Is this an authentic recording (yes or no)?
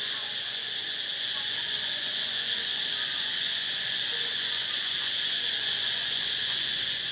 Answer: no